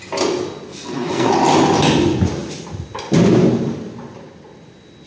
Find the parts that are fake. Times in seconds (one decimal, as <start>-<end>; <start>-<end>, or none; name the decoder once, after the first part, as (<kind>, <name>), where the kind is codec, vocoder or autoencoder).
0.7-1.3 (codec, SNAC)